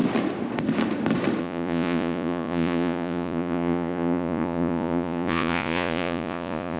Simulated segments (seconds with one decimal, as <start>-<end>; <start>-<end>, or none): 1.4-6.8